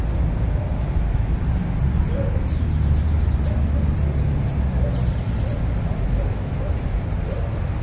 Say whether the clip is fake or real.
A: real